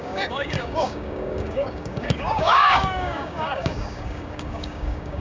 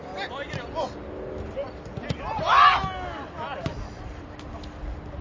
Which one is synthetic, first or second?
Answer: first